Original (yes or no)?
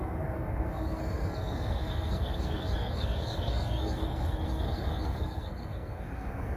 no